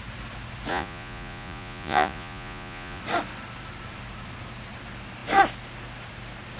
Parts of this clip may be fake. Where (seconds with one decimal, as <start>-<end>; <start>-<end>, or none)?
0.7-3.0